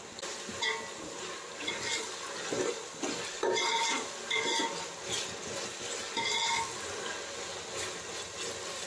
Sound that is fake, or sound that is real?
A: real